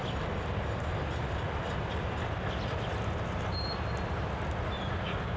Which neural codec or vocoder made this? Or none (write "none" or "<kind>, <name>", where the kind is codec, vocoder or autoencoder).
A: none